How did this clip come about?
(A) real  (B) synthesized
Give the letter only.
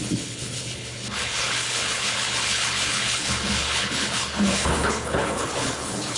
B